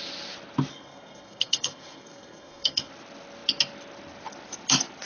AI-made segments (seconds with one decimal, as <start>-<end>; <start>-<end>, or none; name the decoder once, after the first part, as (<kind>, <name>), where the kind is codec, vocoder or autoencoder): 0.7-2.9 (codec, SNAC)